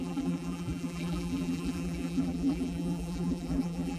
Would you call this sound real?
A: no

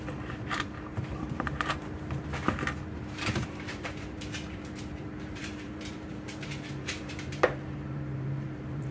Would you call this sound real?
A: no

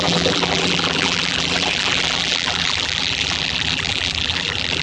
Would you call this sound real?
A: no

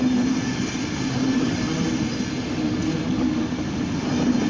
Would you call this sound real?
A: yes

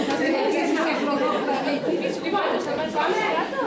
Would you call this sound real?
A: no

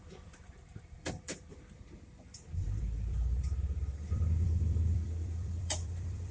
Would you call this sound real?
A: no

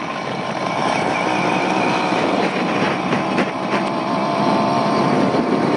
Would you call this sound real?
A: no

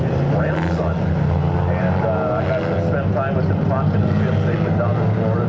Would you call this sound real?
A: yes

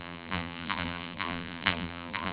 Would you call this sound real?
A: no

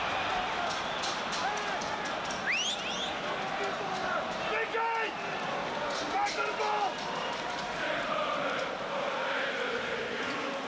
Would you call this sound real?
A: yes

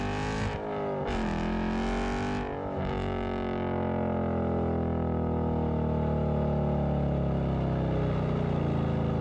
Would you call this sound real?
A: yes